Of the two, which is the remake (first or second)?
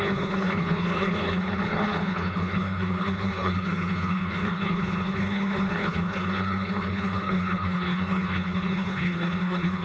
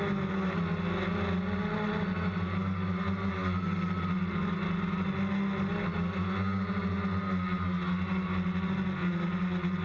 first